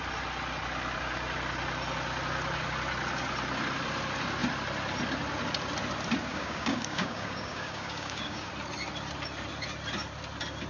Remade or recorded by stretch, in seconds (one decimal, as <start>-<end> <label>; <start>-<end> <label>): 0.0-6.3 recorded; 6.3-8.5 remade; 8.5-10.7 recorded